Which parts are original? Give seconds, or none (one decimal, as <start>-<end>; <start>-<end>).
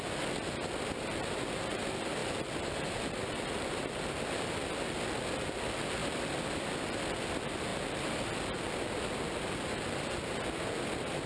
0.0-2.2; 3.6-6.0; 7.0-11.3